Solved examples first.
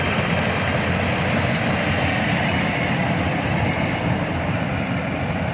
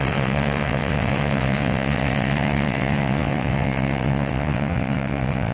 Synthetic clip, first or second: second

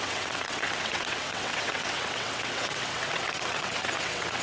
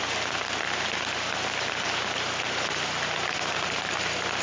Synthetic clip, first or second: first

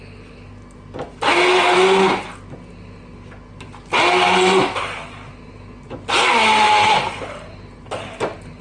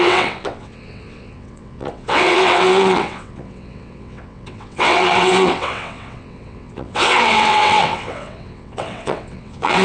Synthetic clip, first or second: second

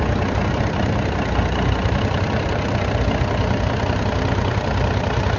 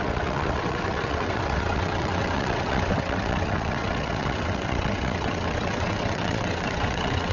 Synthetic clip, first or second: second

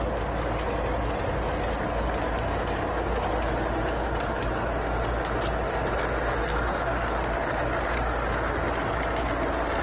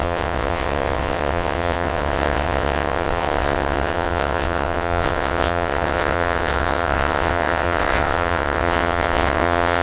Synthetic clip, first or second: second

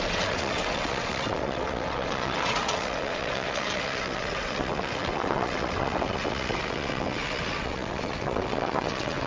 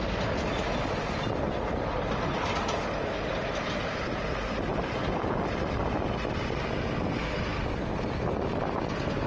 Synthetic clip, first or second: first